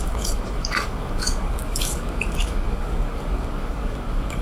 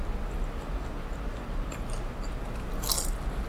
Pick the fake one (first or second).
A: first